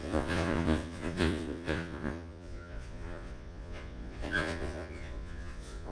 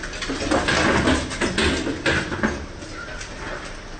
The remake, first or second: first